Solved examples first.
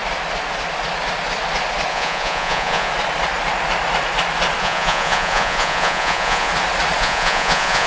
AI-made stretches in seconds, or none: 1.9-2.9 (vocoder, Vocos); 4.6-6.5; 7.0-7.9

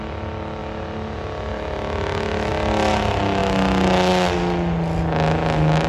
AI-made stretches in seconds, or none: none